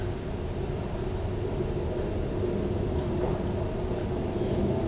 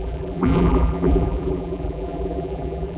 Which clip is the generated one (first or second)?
second